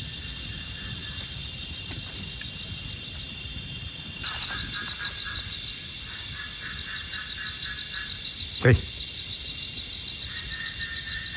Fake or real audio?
real